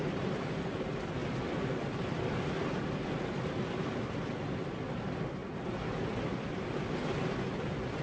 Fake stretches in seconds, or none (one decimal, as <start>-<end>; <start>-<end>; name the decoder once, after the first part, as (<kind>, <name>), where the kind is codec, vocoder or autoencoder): none